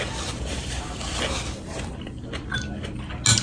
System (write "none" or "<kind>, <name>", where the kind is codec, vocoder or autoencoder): none